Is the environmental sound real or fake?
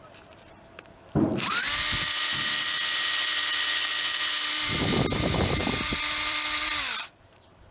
fake